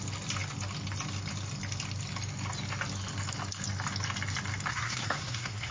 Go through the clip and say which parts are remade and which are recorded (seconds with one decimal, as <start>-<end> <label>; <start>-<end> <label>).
0.0-4.7 recorded; 4.7-5.7 remade